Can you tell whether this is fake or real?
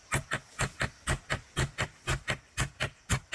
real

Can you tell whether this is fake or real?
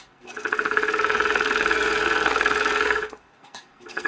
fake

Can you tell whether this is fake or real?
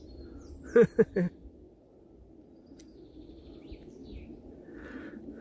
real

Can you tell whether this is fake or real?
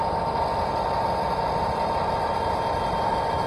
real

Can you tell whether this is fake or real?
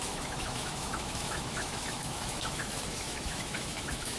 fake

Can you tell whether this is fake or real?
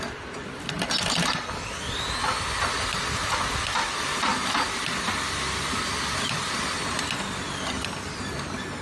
real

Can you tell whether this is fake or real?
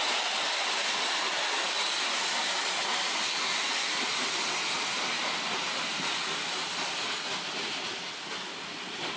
real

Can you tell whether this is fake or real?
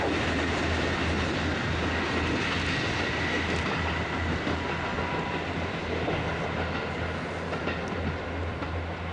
real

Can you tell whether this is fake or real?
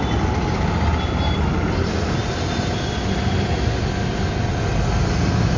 real